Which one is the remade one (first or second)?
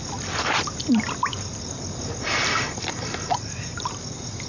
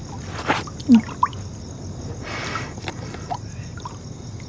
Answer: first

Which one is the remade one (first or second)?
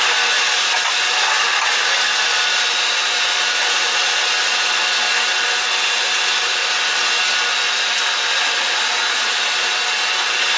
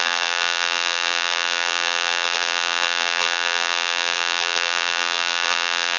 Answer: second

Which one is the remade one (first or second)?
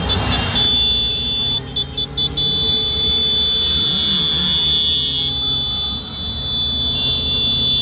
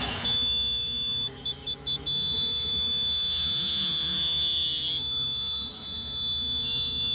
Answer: second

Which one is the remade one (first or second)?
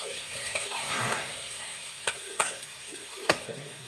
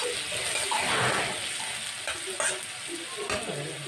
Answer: first